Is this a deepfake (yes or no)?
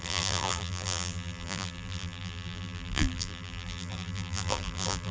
yes